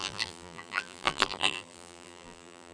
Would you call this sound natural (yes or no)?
no